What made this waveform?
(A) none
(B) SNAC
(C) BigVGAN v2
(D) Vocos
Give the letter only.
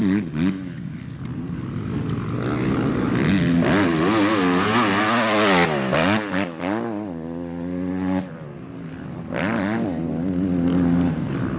A